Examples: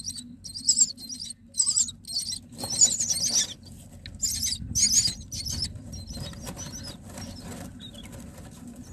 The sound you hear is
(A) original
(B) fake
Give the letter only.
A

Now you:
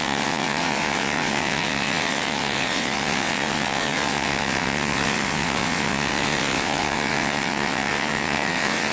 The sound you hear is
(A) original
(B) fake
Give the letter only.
B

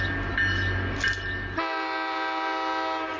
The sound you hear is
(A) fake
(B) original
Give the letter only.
B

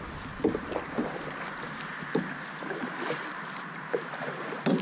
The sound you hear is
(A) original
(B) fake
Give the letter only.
A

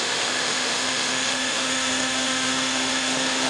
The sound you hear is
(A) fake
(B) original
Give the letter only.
A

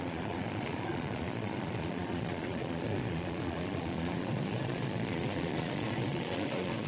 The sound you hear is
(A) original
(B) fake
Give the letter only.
B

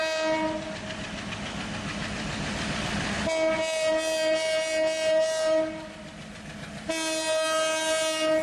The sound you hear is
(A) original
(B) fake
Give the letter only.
A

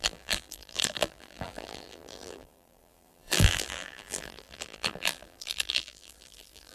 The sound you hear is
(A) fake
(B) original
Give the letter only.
A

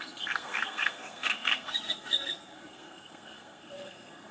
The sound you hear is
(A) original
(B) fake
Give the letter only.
B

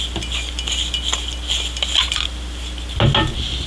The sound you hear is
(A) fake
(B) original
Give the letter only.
B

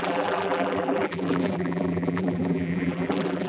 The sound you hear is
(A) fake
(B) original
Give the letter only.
A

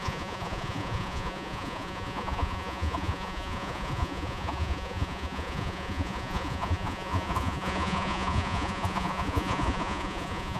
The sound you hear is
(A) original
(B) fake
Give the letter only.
B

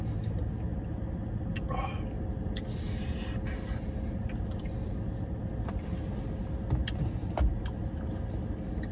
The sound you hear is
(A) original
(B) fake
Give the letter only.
A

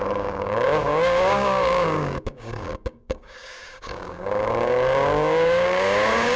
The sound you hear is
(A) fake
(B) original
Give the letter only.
A